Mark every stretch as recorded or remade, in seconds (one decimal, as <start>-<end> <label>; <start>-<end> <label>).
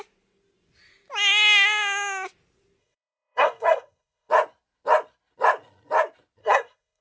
0.0-2.8 recorded; 2.8-4.3 remade; 4.3-6.4 recorded; 6.4-7.0 remade